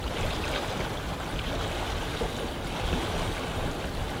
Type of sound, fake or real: real